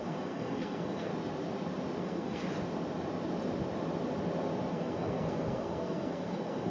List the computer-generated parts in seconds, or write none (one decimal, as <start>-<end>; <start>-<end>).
0.0-1.1; 2.0-2.4; 4.7-6.7

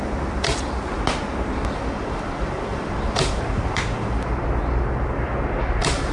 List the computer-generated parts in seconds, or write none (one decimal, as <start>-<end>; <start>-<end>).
2.7-4.3

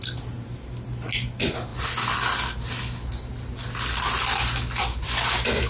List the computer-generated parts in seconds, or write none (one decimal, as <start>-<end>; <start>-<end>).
none

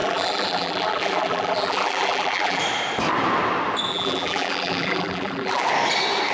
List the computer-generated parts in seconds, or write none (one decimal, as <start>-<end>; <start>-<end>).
0.0-2.6; 3.9-5.7